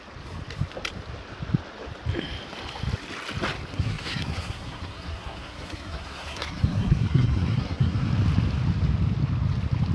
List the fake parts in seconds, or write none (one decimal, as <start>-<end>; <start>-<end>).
3.7-8.1